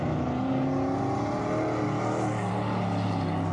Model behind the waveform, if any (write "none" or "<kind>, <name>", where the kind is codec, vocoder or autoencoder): none